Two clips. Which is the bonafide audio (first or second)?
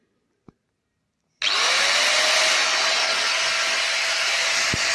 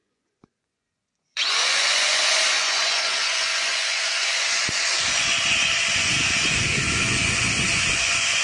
first